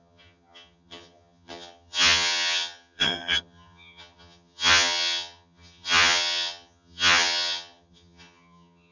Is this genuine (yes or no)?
no